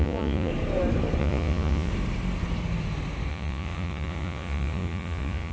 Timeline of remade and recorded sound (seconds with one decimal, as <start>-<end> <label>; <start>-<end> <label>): 0.0-0.5 remade; 0.5-1.2 recorded; 1.2-1.9 remade; 1.9-3.3 recorded; 3.3-5.5 remade